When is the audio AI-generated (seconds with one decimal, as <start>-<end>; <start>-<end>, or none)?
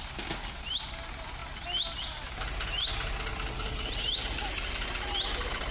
none